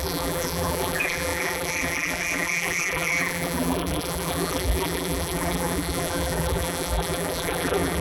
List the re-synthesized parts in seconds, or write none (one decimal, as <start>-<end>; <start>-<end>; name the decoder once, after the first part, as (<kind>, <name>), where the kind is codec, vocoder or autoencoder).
0.0-8.0 (vocoder, BigVGAN v2)